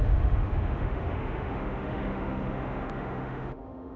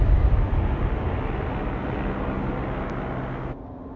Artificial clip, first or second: first